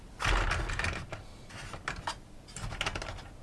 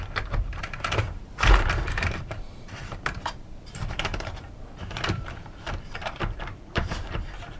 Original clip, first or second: first